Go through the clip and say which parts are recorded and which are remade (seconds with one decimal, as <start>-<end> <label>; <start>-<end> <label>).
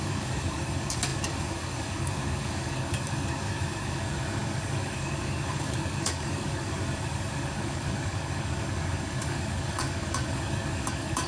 0.0-11.3 remade